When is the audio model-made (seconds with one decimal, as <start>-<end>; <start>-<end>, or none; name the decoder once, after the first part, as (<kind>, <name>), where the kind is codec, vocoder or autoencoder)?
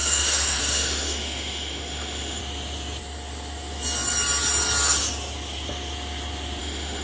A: 0.0-2.4 (autoencoder, DAC-VAE); 6.6-7.0